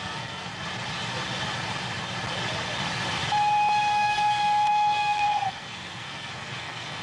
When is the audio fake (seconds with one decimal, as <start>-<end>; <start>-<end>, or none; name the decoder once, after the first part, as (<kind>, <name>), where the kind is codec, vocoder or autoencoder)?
0.0-0.5 (codec, SNAC); 3.9-7.0

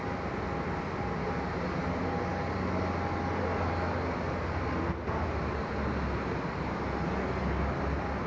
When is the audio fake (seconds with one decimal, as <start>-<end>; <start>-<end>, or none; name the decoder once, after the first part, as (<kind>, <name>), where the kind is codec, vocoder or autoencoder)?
none

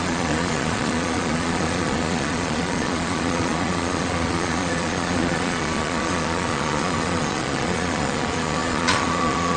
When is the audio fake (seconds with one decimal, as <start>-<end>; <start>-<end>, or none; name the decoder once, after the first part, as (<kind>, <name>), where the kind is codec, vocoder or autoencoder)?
0.0-9.6 (vocoder, Vocos)

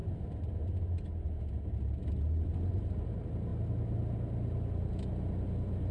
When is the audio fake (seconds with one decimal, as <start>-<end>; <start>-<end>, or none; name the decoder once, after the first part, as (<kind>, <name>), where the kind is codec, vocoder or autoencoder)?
none

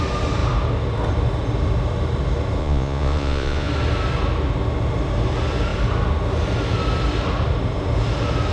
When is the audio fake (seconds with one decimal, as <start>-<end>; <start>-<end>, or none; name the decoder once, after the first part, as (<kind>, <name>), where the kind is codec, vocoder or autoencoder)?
2.6-3.7 (vocoder, Vocos)

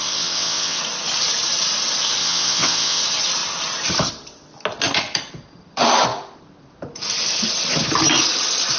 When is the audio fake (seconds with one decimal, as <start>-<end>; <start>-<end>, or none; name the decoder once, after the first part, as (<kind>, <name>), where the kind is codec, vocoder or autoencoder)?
0.0-0.8 (vocoder, WaveNeXt); 2.2-3.0